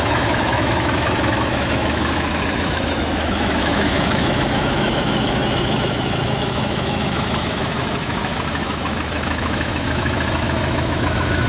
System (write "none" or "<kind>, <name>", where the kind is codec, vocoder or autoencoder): autoencoder, DAC-VAE